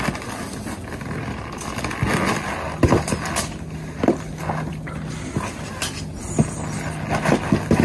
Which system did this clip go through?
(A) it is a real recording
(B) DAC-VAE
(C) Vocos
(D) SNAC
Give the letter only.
A